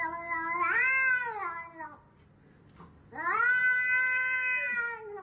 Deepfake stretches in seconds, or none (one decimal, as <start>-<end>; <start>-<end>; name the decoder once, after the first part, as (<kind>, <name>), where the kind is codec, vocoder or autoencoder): none